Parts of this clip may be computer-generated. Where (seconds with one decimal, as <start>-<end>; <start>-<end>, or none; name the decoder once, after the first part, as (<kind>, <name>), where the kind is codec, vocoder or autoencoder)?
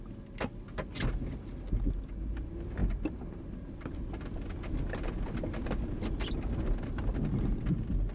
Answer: none